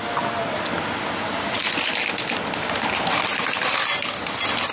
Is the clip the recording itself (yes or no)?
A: yes